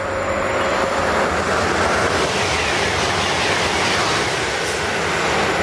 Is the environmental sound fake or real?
real